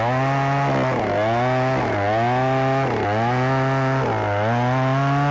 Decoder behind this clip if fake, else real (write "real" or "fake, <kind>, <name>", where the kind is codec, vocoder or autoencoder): real